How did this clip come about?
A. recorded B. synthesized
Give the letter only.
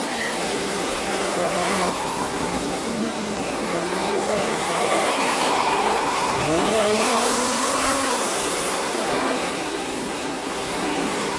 B